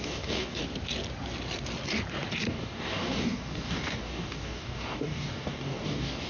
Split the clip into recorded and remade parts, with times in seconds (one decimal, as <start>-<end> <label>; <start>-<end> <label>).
0.0-0.6 remade; 0.6-2.5 recorded; 2.5-6.3 remade